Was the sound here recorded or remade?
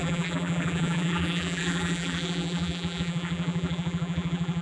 remade